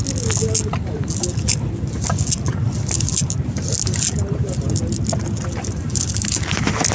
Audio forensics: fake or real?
real